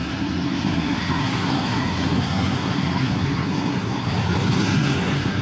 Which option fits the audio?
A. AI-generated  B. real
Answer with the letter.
A